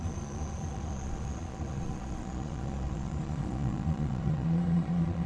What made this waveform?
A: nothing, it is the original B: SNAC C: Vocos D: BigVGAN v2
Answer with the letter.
C